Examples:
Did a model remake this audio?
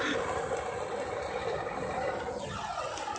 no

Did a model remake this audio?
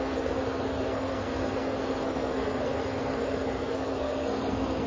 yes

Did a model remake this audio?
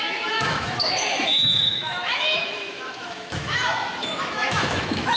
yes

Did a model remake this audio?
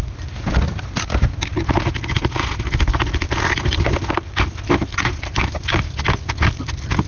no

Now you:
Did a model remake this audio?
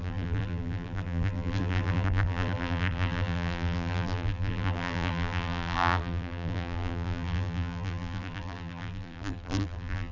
yes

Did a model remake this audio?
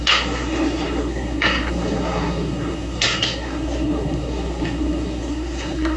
yes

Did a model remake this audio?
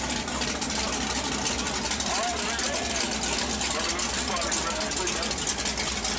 no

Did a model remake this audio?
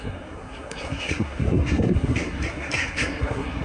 yes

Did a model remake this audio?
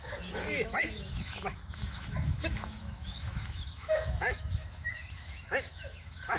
yes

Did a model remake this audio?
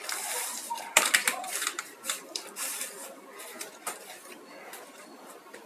yes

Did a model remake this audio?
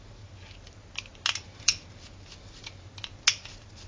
no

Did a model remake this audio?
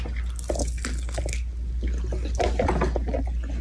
no